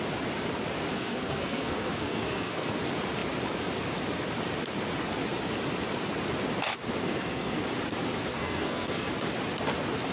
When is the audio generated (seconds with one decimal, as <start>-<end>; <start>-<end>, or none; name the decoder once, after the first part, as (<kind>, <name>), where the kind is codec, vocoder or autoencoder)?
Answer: 0.9-2.8 (codec, SNAC); 7.0-7.6; 8.3-9.1